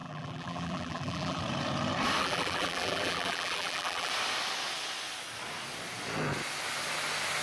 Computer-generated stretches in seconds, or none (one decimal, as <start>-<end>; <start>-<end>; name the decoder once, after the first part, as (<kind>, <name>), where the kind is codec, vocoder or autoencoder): 0.0-1.4 (vocoder, BigVGAN v2); 2.2-4.1